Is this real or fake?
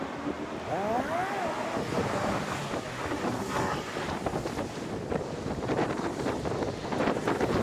real